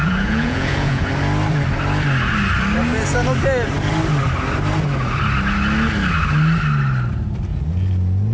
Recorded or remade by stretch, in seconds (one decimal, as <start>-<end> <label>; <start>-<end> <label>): 0.0-1.1 remade; 1.1-8.3 recorded